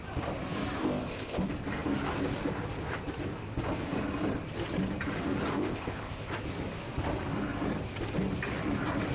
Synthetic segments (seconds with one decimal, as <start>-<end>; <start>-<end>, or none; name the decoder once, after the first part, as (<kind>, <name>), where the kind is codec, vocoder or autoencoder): 0.8-1.4 (codec, ZipCodec); 5.6-6.3